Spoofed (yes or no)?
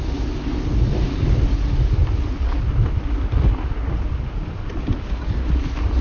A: no